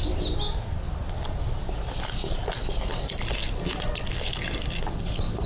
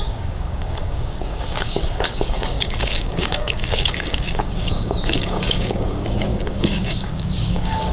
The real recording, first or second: first